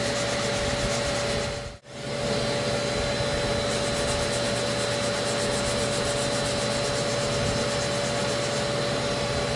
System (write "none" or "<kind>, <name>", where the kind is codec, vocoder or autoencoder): none